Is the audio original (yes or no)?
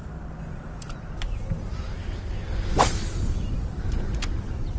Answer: yes